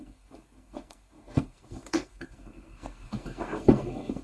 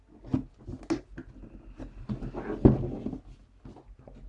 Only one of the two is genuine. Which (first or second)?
second